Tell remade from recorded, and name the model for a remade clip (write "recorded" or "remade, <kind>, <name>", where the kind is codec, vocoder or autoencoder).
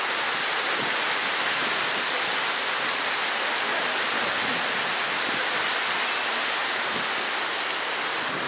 recorded